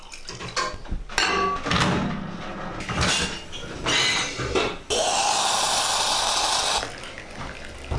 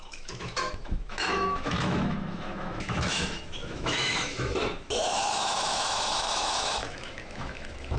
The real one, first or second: first